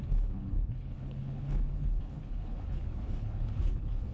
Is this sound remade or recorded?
remade